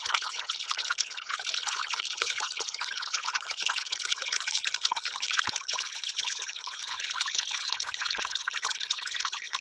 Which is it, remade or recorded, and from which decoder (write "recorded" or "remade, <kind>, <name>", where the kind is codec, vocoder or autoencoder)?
remade, codec, HILCodec